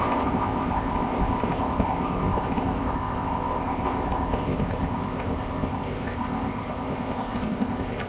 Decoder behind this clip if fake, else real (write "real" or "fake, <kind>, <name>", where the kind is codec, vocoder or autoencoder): fake, codec, ZipCodec